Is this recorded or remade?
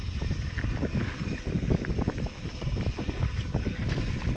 recorded